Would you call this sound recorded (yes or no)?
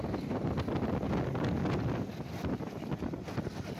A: yes